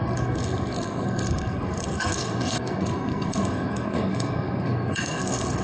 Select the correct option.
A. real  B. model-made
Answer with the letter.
B